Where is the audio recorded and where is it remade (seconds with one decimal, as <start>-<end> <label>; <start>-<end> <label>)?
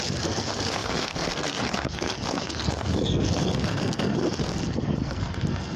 0.0-5.8 remade